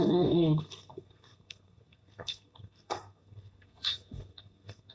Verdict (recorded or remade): remade